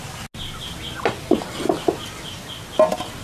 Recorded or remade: recorded